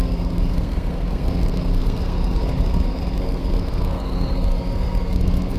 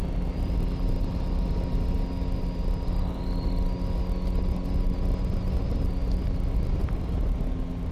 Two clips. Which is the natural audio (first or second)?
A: second